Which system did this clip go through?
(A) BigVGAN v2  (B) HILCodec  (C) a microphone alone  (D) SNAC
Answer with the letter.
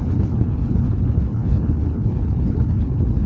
B